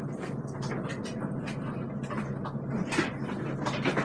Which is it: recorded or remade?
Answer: recorded